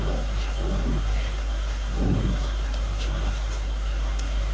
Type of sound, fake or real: fake